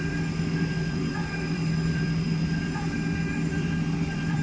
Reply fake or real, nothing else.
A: fake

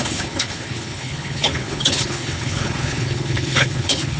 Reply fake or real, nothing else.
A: fake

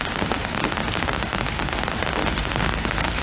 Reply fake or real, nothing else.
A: real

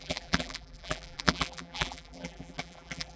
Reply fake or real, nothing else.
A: fake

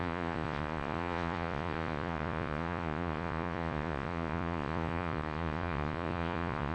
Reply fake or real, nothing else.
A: fake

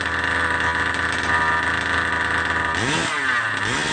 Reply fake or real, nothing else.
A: real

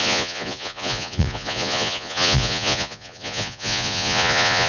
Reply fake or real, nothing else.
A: fake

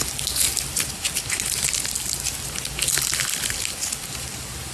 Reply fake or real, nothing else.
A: real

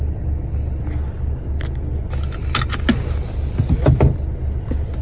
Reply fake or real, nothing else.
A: real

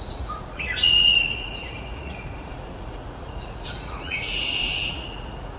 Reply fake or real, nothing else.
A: fake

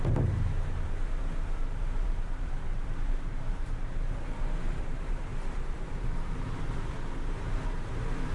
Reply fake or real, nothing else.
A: fake